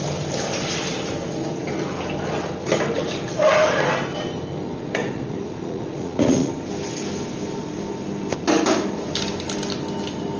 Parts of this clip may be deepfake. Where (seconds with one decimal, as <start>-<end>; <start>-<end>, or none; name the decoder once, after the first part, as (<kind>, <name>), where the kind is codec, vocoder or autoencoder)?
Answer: 5.0-6.5 (vocoder, Vocos)